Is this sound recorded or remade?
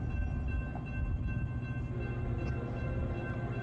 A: recorded